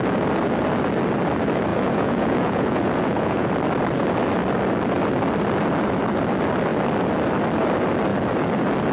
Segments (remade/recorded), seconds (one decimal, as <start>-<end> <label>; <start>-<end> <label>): 0.0-1.7 recorded; 1.7-3.5 remade; 3.5-8.9 recorded